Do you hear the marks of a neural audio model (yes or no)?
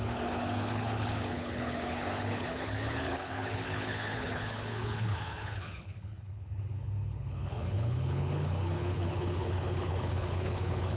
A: yes